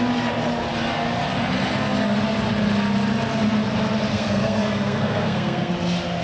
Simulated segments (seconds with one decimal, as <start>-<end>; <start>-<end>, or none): 4.1-5.7